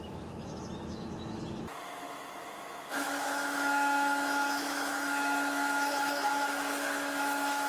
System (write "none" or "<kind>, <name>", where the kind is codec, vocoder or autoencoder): autoencoder, DAC-VAE